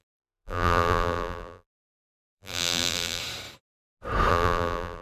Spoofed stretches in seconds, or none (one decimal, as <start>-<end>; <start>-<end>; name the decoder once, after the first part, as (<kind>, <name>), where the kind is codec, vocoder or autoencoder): 0.0-3.2 (vocoder, BigVGAN v2); 4.3-5.0

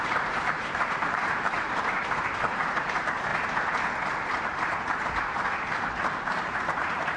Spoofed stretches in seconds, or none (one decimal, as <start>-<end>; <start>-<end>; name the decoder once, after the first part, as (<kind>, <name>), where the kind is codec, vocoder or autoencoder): 0.0-3.3 (vocoder, BigVGAN v2); 4.1-7.2

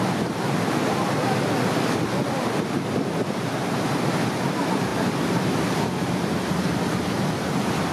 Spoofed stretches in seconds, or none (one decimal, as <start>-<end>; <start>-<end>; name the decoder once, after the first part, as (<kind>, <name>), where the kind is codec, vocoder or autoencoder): 4.9-6.3 (vocoder, BigVGAN v2)

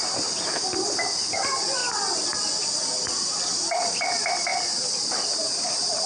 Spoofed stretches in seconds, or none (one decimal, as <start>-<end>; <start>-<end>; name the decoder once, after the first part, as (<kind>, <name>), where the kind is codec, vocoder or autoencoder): none